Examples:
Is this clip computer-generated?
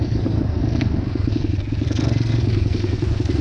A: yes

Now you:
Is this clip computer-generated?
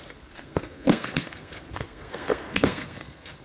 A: yes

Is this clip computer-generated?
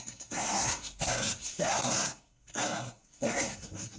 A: yes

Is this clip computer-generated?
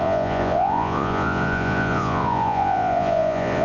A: yes